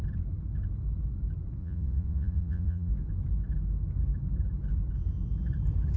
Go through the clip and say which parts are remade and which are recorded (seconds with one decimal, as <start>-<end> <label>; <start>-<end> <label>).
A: 0.0-1.6 recorded; 1.6-2.9 remade; 2.9-6.0 recorded

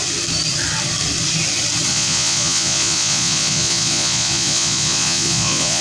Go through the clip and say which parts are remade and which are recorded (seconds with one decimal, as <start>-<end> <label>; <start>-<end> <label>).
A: 0.0-1.9 recorded; 1.9-5.8 remade